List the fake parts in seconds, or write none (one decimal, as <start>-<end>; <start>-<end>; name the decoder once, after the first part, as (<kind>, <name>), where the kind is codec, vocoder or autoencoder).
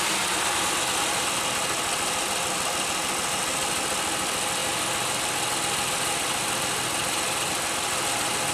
none